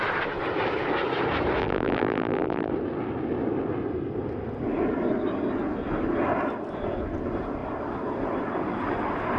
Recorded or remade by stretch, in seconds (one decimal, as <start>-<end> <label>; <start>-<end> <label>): 0.0-1.6 recorded; 1.6-2.7 remade; 2.7-9.4 recorded

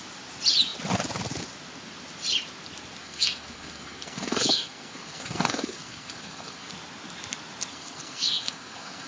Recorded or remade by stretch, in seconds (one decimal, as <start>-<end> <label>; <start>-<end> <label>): 0.0-3.0 recorded; 3.0-6.7 remade; 6.7-7.7 recorded; 7.7-9.1 remade

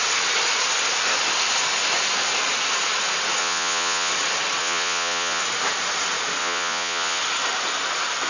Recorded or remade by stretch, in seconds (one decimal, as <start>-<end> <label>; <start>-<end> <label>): 0.0-3.4 recorded; 3.4-4.1 remade; 4.1-4.6 recorded; 4.6-5.4 remade; 5.4-6.4 recorded; 6.4-7.2 remade; 7.2-8.3 recorded

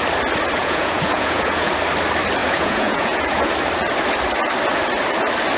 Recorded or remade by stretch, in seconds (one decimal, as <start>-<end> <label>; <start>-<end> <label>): 0.0-0.6 recorded; 0.6-1.7 remade; 1.7-2.4 recorded; 2.4-3.5 remade; 3.5-5.6 recorded